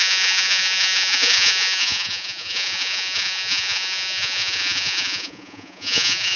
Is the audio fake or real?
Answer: fake